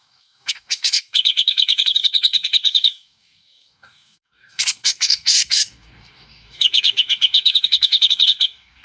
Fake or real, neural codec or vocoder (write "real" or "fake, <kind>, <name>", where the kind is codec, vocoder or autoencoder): fake, codec, DAC